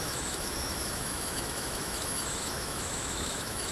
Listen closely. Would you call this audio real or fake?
fake